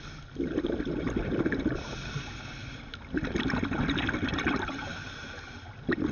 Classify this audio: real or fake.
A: real